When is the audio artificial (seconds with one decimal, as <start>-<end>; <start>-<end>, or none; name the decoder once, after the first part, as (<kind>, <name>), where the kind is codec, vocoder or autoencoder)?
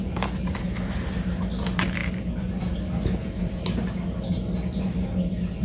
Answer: none